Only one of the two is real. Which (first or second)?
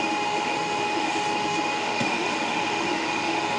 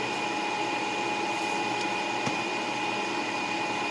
second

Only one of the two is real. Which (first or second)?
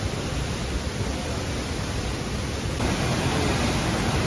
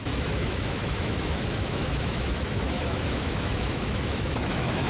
first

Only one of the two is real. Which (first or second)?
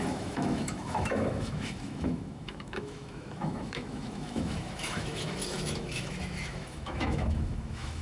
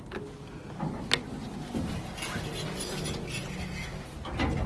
second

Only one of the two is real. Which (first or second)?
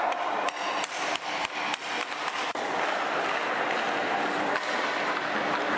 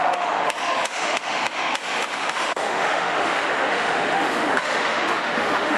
first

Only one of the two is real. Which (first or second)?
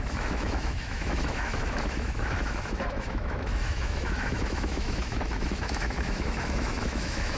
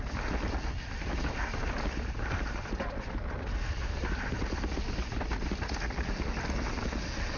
second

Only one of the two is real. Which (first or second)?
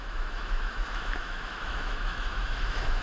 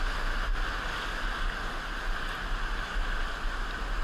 second